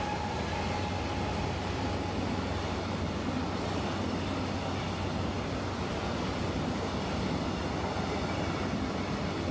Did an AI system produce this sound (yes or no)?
no